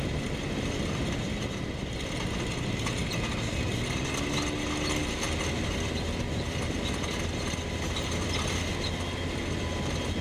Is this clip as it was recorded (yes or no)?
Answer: yes